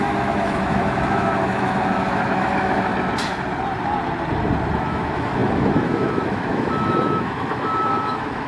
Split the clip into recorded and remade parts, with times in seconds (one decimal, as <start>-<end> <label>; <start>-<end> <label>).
0.0-2.9 remade; 2.9-4.9 recorded; 4.9-8.5 remade